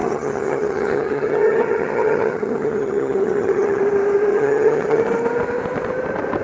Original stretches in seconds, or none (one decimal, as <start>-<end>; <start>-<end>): 3.8-4.3; 5.0-6.4